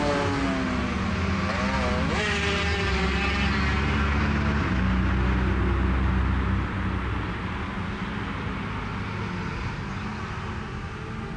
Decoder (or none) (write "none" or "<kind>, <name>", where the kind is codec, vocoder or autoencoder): none